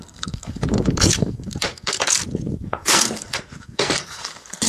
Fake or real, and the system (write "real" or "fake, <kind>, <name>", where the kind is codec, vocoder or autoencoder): fake, codec, SNAC